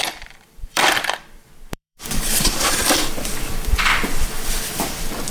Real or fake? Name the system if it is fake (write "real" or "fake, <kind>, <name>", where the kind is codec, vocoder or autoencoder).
fake, vocoder, BigVGAN v2